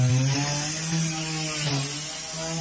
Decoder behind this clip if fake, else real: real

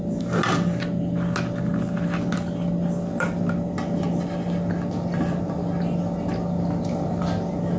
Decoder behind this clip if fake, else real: real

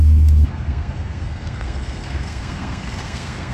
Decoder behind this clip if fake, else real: fake, codec, SNAC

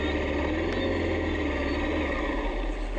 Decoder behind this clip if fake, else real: real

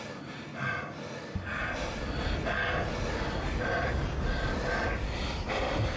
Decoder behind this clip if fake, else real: real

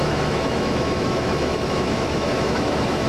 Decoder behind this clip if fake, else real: fake, autoencoder, DAC-VAE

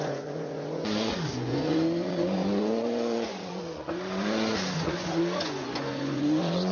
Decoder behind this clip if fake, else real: fake, vocoder, Vocos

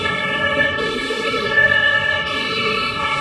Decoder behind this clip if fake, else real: fake, codec, SNAC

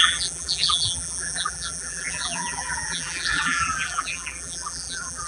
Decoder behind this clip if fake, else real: fake, vocoder, BigVGAN v2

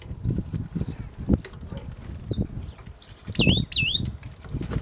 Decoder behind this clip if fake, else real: real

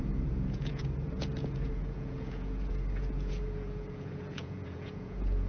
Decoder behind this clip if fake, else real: fake, vocoder, Vocos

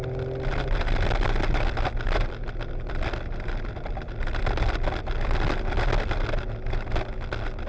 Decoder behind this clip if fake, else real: real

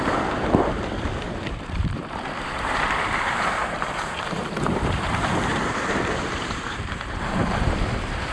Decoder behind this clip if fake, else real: fake, vocoder, BigVGAN v2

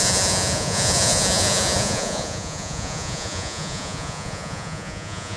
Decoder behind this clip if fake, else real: fake, vocoder, Vocos